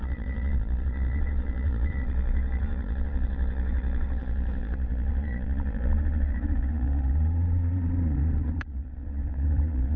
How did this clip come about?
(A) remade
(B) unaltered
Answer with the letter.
A